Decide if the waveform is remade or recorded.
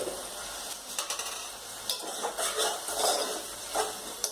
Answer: recorded